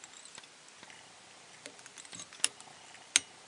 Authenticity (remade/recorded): recorded